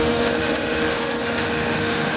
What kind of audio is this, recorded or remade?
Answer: remade